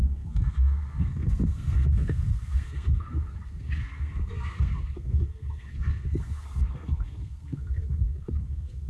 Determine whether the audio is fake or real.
fake